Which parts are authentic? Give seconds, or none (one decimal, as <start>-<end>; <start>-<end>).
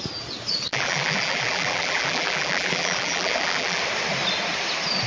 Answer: 0.0-0.7; 3.8-5.1